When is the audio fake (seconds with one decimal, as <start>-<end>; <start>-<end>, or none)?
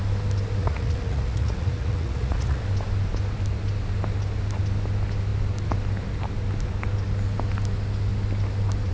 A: 0.6-2.6